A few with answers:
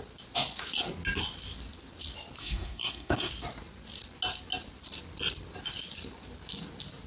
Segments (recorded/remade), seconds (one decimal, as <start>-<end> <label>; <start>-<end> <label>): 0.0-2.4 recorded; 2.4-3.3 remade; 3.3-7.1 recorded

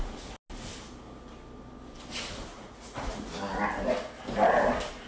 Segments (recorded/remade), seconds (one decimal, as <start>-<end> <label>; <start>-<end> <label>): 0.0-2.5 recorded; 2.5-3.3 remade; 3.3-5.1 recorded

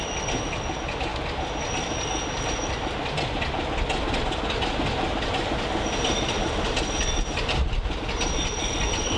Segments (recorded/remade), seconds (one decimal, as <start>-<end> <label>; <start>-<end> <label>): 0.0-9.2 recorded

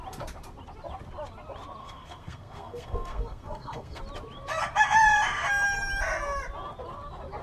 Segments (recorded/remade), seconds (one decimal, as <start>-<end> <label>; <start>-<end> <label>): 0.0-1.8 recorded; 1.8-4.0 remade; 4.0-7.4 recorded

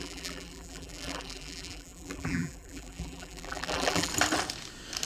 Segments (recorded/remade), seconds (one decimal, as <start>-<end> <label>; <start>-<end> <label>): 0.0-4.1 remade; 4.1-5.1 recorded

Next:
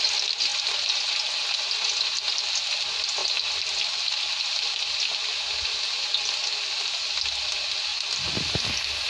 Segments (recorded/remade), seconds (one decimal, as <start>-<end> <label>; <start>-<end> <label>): 0.0-0.5 recorded; 0.5-1.1 remade; 1.1-3.2 recorded; 3.2-4.3 remade; 4.3-9.1 recorded